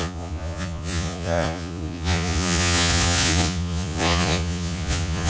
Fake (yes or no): yes